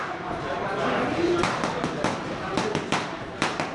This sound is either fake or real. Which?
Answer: fake